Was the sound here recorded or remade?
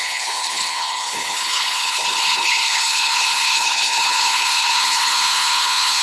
remade